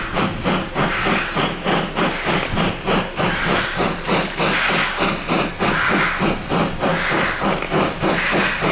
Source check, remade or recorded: recorded